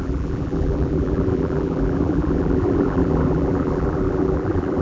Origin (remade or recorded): remade